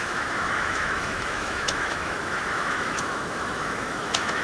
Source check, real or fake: fake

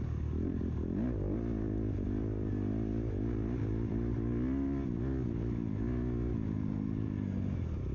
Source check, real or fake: real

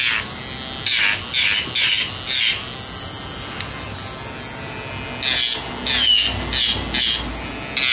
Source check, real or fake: real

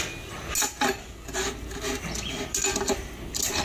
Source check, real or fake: real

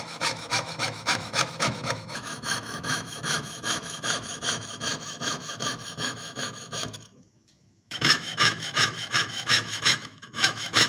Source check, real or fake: fake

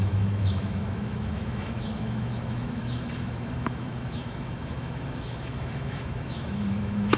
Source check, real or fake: fake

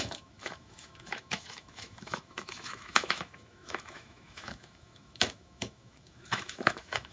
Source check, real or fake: fake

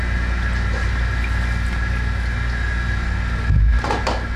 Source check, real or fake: real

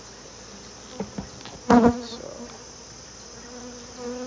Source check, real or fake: real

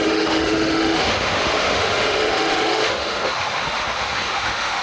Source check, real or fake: fake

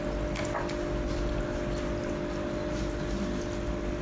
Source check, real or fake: real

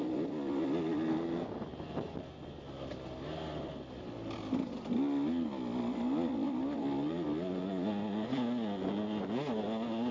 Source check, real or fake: real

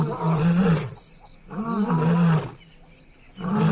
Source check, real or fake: real